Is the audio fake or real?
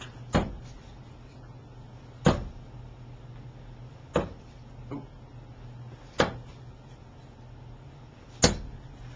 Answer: real